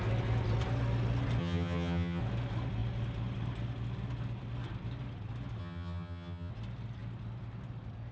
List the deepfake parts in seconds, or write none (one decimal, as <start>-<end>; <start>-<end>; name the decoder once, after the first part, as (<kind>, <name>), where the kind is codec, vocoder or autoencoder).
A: 1.4-2.2 (vocoder, HiFi-GAN); 5.6-6.5